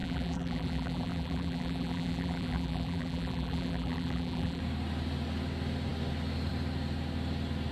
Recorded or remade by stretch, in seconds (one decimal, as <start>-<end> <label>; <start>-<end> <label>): 0.0-4.6 remade; 4.6-7.7 recorded